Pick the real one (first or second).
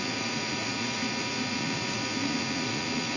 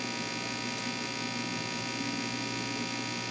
second